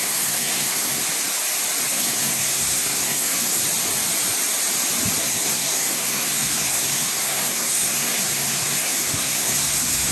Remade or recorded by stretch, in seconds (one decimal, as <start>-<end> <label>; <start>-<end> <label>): 0.0-1.0 remade; 1.0-1.9 recorded; 1.9-3.6 remade; 3.6-5.2 recorded; 5.2-10.1 remade